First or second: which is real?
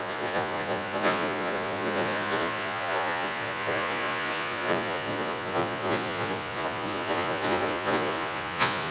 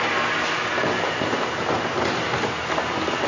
second